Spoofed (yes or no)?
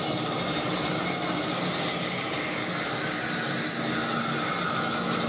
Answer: no